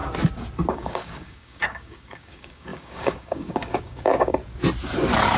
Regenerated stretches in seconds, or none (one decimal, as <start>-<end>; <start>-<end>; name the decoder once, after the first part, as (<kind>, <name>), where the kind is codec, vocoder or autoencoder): 0.7-4.4 (codec, DAC)